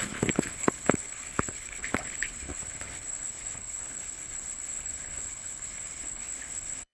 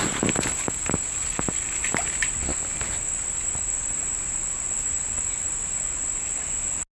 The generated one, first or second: first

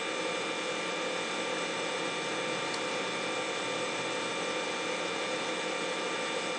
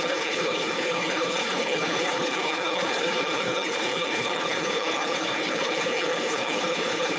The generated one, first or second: second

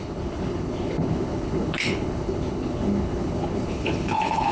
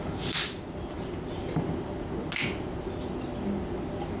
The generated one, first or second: first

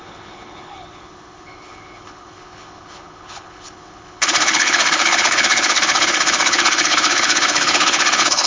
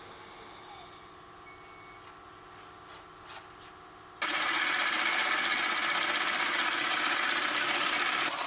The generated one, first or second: first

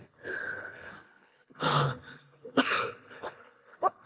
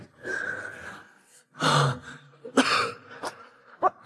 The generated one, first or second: first